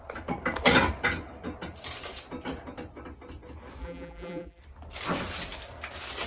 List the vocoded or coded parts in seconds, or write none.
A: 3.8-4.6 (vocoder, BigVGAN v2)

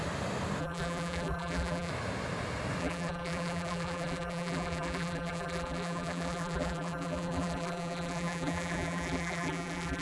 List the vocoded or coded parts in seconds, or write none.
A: 0.6-1.9 (vocoder, BigVGAN v2); 2.8-10.0

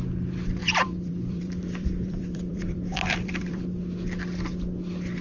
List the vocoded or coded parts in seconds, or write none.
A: 0.6-3.7 (vocoder, BigVGAN v2)

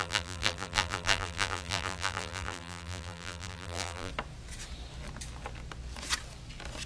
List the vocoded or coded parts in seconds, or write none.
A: 0.0-4.1 (vocoder, BigVGAN v2)

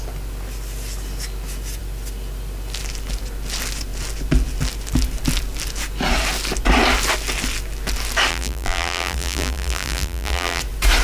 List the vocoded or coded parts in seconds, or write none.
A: 8.3-10.6 (vocoder, BigVGAN v2)

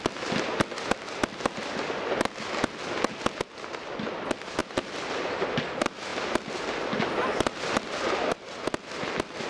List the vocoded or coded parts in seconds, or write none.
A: none

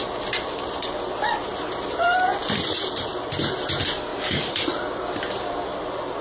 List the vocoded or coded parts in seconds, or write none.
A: 2.4-3.1 (vocoder, BigVGAN v2); 4.1-4.8

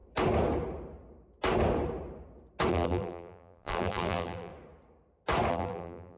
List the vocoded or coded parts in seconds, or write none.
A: 2.7-4.5 (vocoder, BigVGAN v2); 5.5-6.2